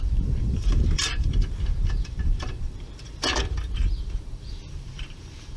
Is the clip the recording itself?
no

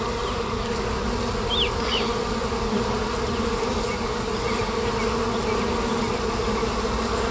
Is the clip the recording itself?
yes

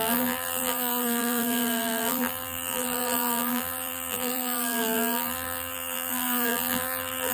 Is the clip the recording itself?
no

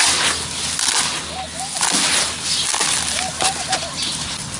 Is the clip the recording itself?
yes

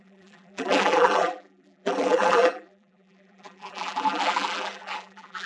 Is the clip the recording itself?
no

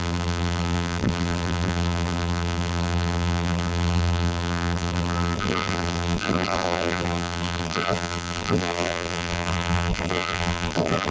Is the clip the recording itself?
no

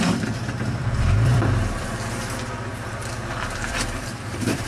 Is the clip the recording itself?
no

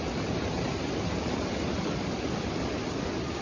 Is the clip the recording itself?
yes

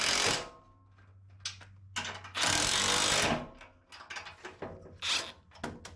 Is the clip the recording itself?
yes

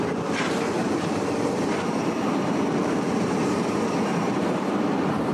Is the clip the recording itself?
no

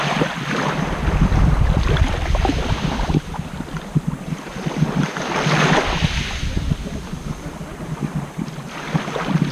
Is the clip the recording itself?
no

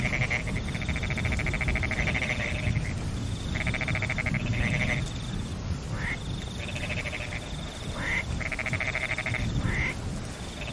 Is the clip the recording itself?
yes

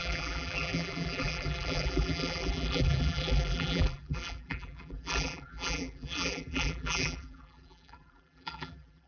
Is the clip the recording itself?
no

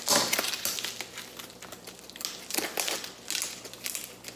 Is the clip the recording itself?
yes